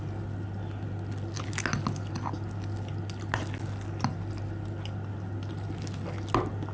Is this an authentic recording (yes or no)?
yes